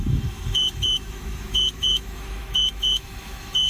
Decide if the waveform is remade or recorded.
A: remade